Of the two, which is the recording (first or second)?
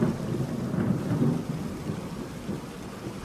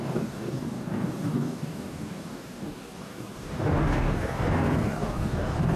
first